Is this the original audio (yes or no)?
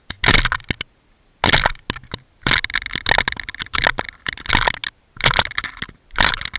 yes